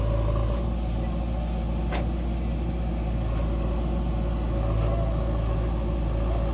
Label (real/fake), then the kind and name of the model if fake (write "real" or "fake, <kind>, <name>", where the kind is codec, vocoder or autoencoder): real